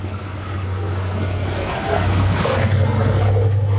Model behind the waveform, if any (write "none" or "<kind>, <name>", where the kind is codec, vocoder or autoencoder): codec, SNAC